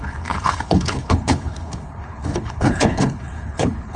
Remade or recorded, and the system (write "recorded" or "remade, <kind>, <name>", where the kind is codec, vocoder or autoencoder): remade, codec, HILCodec